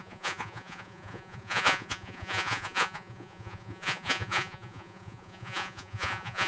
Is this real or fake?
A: fake